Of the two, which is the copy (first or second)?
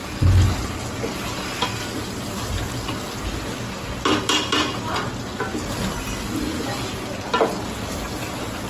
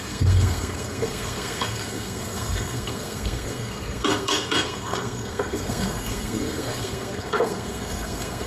second